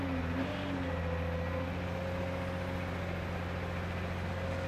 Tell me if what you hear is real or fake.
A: real